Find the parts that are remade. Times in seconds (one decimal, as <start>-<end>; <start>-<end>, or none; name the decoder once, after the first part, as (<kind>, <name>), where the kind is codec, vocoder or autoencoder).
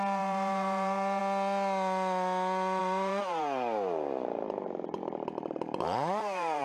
0.0-1.2 (vocoder, BigVGAN v2); 2.8-6.6